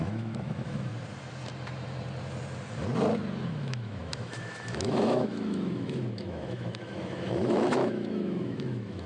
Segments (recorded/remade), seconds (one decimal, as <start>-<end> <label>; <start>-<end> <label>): 0.0-0.9 remade; 0.9-3.5 recorded; 3.5-9.1 remade

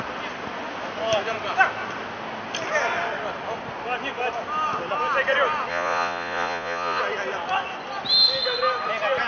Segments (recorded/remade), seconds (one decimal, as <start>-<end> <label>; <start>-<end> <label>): 0.0-5.7 recorded; 5.7-7.0 remade; 7.0-9.3 recorded

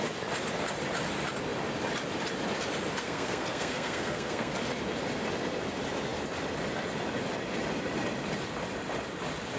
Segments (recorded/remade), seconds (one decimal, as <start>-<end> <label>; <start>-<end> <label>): 0.0-3.0 recorded; 3.0-4.5 remade; 4.5-9.6 recorded